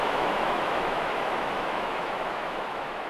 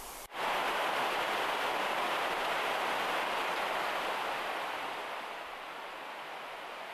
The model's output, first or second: first